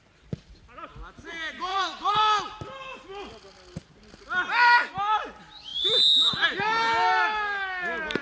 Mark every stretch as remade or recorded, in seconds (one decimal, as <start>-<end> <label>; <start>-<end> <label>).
0.0-1.7 recorded; 1.7-2.2 remade; 2.2-8.2 recorded